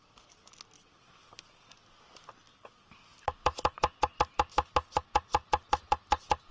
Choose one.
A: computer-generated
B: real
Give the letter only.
B